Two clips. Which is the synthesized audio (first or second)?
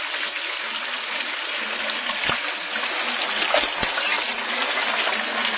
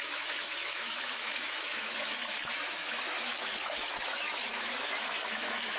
second